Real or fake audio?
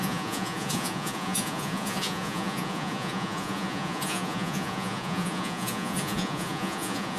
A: fake